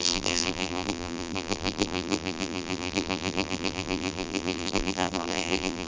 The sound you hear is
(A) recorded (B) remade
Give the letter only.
B